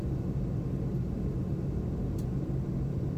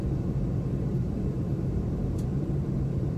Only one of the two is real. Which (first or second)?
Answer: first